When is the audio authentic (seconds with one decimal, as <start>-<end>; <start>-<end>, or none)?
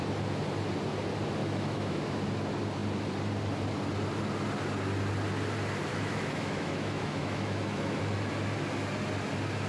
0.0-1.4; 2.2-5.9; 8.0-9.7